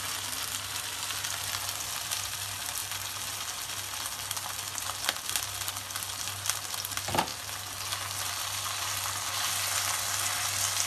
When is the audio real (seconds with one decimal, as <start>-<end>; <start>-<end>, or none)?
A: 0.0-10.9